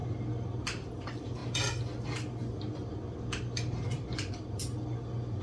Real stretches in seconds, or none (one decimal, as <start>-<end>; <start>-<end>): 0.0-5.4